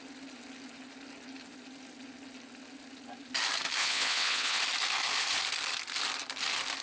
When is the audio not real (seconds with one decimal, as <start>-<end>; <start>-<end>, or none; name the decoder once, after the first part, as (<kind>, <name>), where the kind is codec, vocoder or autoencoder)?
3.8-4.6 (vocoder, WaveNeXt)